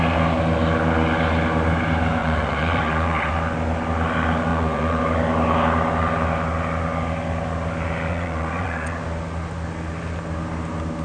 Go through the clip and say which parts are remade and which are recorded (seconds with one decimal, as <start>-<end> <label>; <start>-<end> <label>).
0.0-2.2 recorded; 2.2-3.3 remade; 3.3-4.5 recorded; 4.5-5.0 remade; 5.0-8.1 recorded; 8.1-9.0 remade; 9.0-11.0 recorded